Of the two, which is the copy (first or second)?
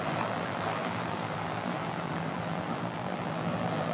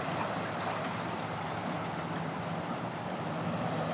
first